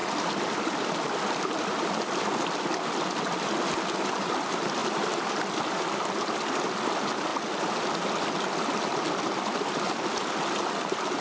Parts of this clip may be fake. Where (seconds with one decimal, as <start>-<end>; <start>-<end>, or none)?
none